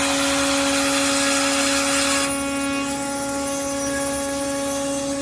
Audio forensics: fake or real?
real